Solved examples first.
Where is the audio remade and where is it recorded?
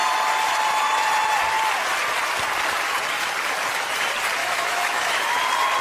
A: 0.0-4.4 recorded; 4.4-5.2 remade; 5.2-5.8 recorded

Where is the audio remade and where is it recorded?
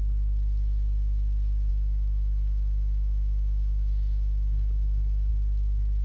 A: 0.0-1.7 recorded; 1.7-5.3 remade; 5.3-6.0 recorded